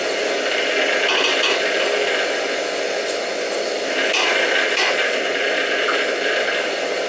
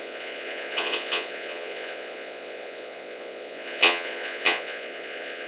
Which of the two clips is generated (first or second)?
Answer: second